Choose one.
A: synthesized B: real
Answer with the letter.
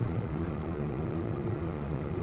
A